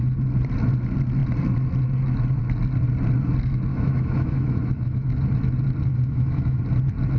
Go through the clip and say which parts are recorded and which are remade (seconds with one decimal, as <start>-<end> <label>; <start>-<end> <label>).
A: 0.0-3.7 recorded; 3.7-5.1 remade; 5.1-5.9 recorded; 5.9-6.6 remade; 6.6-7.2 recorded